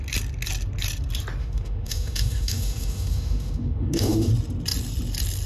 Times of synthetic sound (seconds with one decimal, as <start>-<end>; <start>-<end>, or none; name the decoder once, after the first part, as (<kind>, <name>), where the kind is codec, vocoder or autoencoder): 1.4-4.3 (autoencoder, DAC-VAE)